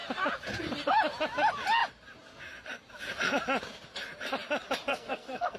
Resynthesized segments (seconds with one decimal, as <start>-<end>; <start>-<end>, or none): 4.9-5.6